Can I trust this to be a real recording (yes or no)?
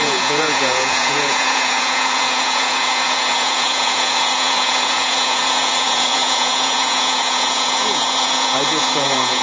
no